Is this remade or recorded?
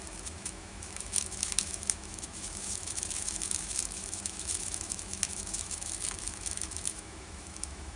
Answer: remade